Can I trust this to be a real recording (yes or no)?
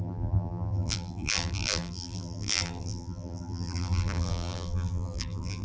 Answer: no